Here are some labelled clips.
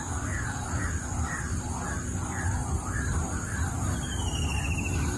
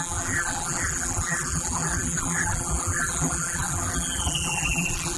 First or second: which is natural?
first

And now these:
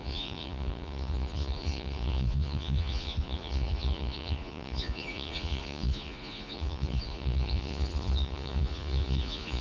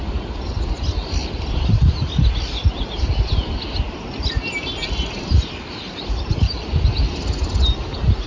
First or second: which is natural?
second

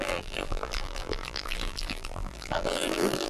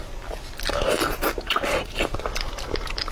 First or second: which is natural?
second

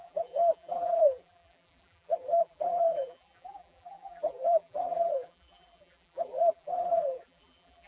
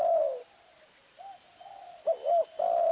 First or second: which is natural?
second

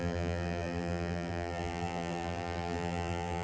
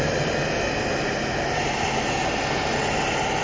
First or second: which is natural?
second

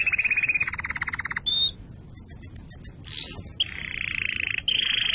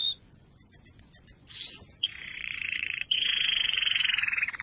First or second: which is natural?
first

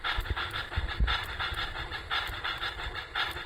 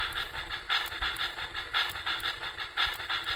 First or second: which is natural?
second